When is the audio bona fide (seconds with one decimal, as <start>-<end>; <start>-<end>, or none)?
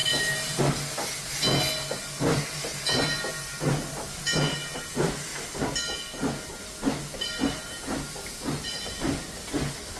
0.6-10.0